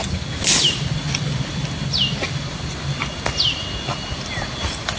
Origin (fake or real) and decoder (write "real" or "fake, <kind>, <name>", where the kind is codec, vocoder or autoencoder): real